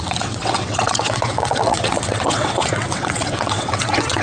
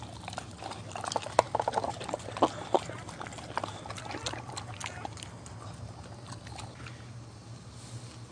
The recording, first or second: second